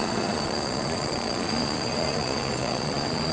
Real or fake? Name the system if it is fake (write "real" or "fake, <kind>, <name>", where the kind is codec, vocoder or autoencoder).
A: fake, vocoder, Vocos